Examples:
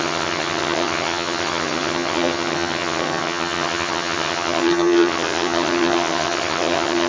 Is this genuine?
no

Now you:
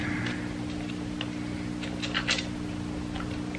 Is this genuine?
yes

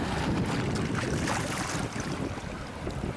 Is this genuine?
yes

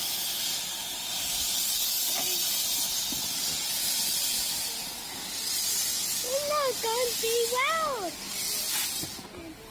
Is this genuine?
yes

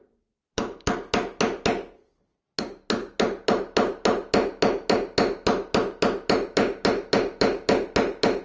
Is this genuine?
yes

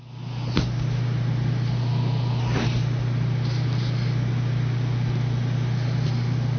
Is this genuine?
yes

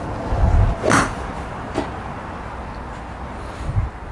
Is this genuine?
yes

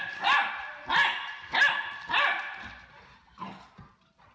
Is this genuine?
yes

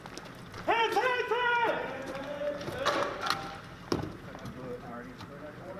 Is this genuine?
yes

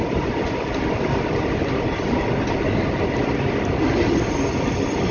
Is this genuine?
yes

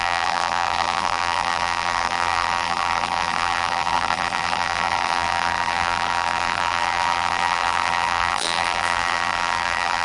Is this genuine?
no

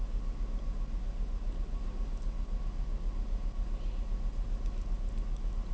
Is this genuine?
yes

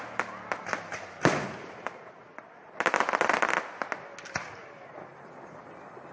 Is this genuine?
yes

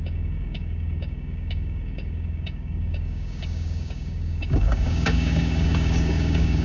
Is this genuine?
no